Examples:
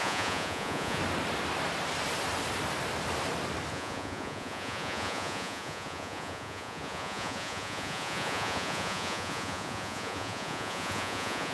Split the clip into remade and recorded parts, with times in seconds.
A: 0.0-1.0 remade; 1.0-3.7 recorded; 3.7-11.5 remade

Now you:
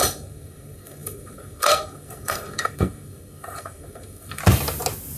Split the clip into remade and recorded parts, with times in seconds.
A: 0.0-4.4 remade; 4.4-5.2 recorded

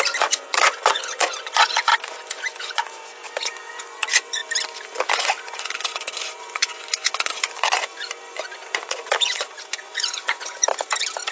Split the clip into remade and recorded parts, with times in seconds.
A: 0.0-4.4 remade; 4.4-5.1 recorded; 5.1-10.7 remade; 10.7-11.3 recorded

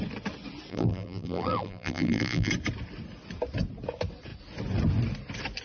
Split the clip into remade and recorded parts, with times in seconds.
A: 0.0-0.7 recorded; 0.7-2.5 remade; 2.5-5.6 recorded

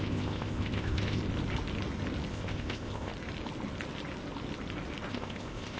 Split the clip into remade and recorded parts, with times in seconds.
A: 0.0-1.2 remade; 1.2-2.3 recorded; 2.3-3.1 remade; 3.1-5.1 recorded; 5.1-5.8 remade

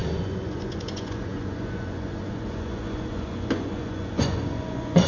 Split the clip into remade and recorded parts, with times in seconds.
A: 0.0-5.1 remade

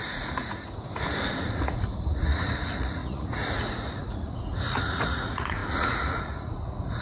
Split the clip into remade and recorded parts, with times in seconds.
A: 0.0-7.0 remade

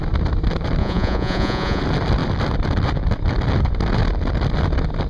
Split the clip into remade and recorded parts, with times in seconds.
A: 0.0-0.8 recorded; 0.8-1.8 remade; 1.8-5.1 recorded